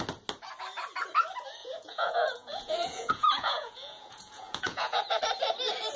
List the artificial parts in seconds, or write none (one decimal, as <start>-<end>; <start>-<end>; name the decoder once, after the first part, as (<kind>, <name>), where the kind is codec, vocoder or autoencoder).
1.6-5.2 (vocoder, Vocos)